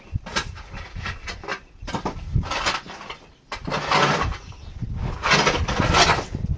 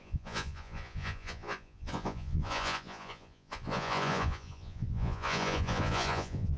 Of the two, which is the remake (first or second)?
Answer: second